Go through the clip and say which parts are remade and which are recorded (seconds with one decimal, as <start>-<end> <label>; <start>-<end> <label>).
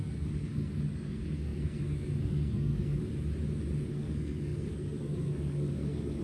0.0-3.0 remade; 3.0-3.9 recorded; 3.9-6.2 remade